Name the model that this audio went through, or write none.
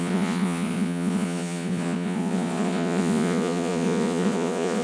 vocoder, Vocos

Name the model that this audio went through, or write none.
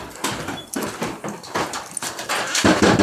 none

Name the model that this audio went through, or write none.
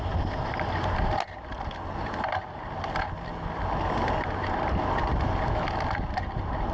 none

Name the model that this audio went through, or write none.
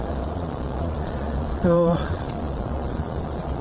vocoder, Vocos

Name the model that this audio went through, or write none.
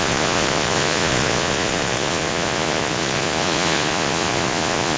vocoder, Vocos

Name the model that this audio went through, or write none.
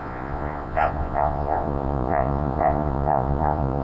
vocoder, Vocos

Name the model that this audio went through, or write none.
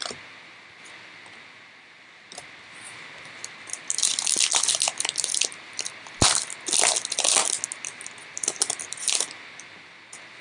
none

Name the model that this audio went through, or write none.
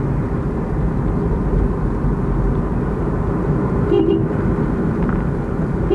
none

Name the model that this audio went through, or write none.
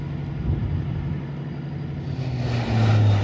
none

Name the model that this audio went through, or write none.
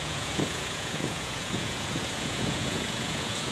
vocoder, Vocos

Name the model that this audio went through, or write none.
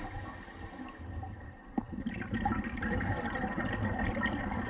none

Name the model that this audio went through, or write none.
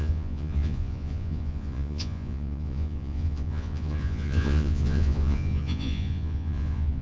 vocoder, Vocos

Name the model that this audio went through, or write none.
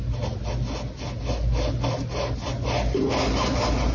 none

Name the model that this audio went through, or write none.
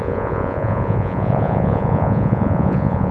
vocoder, Vocos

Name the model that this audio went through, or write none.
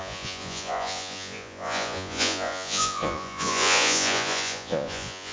vocoder, Vocos